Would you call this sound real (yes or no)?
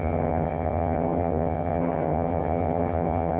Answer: no